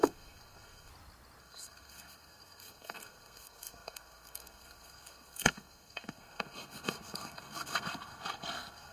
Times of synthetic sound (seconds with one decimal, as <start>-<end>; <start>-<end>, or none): 0.0-0.9; 1.4-8.9